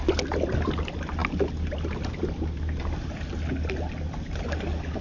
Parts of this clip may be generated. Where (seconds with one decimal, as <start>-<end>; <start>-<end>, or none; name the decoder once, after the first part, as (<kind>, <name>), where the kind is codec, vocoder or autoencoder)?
none